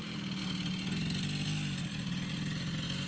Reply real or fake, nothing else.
real